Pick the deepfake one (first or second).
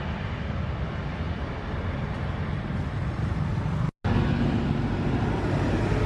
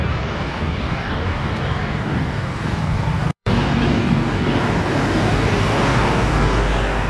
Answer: second